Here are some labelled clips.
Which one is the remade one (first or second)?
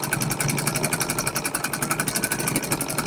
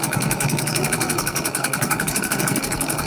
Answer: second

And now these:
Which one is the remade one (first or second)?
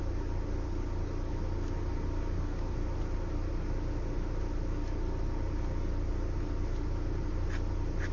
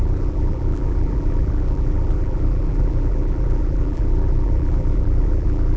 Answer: second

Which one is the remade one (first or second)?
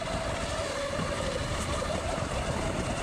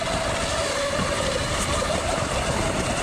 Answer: first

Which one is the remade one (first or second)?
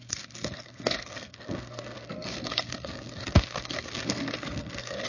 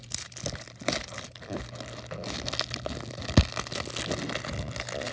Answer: first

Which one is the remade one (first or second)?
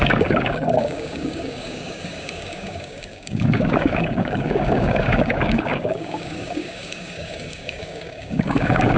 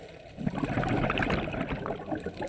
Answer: first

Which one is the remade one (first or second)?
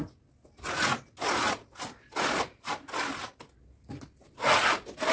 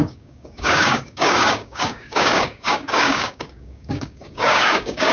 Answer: second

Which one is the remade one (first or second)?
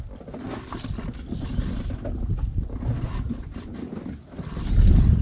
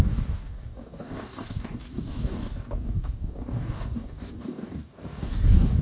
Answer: second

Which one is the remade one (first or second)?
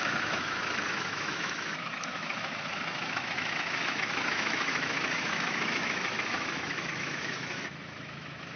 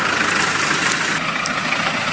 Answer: first